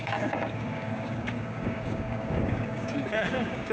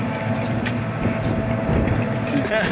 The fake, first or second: first